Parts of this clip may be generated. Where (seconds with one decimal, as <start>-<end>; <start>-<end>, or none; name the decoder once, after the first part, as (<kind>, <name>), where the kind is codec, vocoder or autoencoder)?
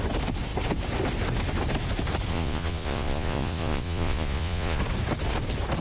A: 2.3-4.8 (vocoder, Vocos)